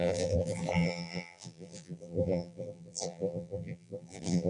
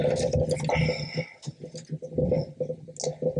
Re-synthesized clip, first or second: first